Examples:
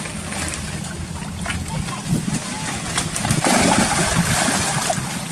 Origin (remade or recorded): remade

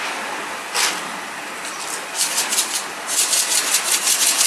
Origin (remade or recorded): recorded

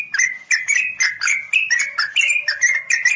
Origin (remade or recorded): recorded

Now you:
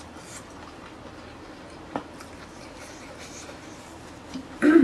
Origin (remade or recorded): recorded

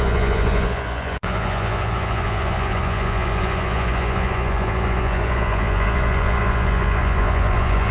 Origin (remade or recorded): remade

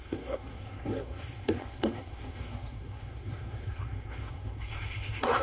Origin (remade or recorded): remade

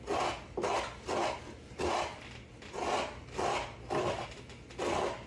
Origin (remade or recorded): recorded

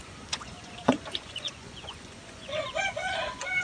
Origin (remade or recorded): remade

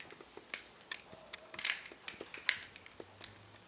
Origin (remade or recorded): recorded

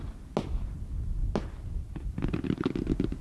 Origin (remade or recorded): recorded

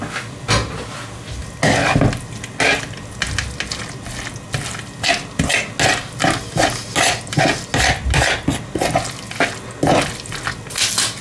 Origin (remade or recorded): recorded